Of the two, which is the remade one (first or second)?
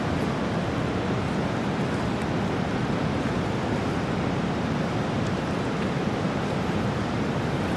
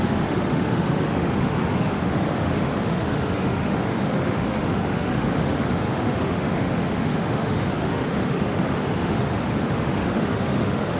second